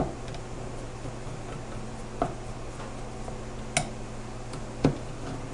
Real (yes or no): yes